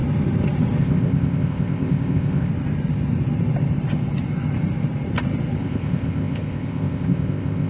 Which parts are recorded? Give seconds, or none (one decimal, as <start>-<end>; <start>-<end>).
0.0-0.8; 2.5-5.6